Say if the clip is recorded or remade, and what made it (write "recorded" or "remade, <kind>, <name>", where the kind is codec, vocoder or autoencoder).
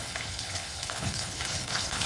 remade, codec, HILCodec